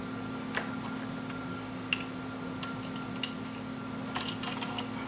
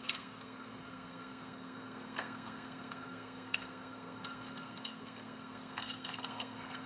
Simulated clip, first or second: second